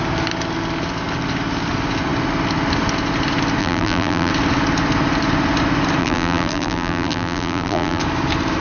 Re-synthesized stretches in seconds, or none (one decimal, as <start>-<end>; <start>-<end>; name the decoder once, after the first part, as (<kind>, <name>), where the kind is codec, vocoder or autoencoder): 3.6-4.3 (vocoder, BigVGAN v2); 6.0-8.0